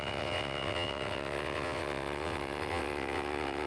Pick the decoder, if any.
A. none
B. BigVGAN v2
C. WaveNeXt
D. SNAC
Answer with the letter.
C